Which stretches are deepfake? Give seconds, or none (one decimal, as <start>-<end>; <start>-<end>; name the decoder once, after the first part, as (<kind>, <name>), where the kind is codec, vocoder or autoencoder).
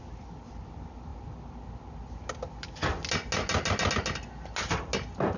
none